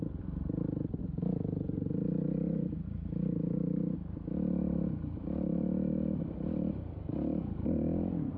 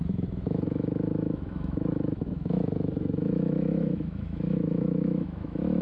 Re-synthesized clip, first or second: second